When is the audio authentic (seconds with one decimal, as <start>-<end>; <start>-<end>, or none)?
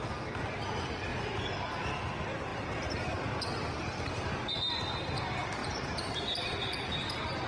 0.0-2.5; 3.4-5.6; 7.0-7.5